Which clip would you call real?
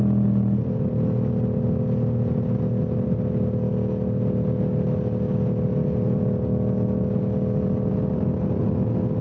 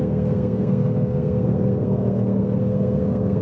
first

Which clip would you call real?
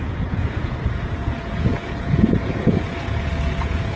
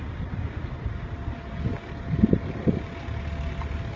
second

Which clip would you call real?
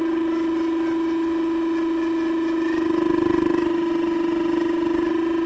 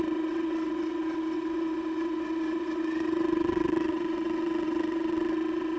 first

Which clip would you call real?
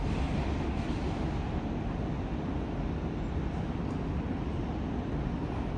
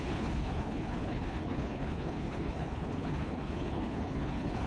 first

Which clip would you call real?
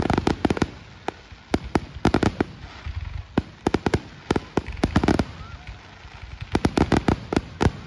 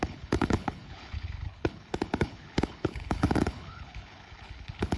first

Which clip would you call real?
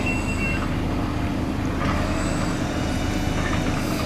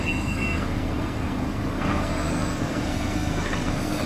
first